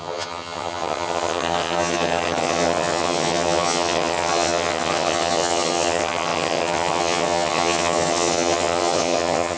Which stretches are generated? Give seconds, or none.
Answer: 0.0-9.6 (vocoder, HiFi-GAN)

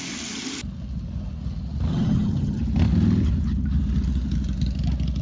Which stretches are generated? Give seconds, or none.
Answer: 1.9-2.6 (vocoder, HiFi-GAN)

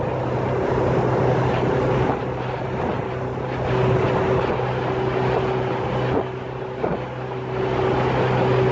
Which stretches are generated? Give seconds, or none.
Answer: none

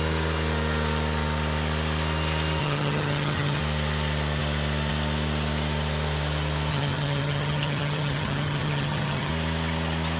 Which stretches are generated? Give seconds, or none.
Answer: 2.6-3.6 (vocoder, HiFi-GAN); 6.7-9.3

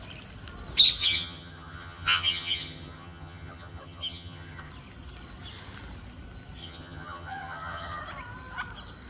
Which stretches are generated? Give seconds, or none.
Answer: 1.0-4.7 (vocoder, HiFi-GAN); 6.6-8.0

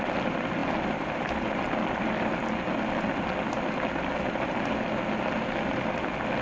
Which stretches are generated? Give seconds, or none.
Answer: none

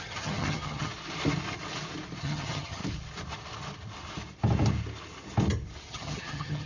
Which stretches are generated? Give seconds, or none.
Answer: 0.0-0.9 (vocoder, HiFi-GAN); 2.2-2.8; 5.9-6.7

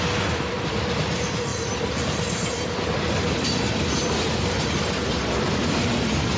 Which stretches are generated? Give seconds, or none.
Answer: none